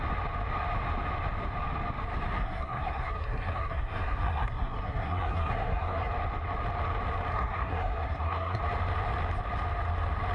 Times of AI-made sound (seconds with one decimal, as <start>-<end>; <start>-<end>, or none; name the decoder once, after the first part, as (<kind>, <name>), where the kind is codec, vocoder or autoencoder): 2.4-6.1 (codec, SNAC); 7.3-8.6